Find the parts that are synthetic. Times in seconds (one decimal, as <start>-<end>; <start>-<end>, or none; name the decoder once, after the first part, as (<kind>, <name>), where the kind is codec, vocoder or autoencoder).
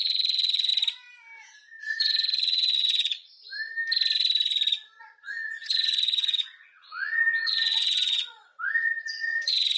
0.0-0.7 (vocoder, Vocos); 1.8-3.3; 5.0-9.8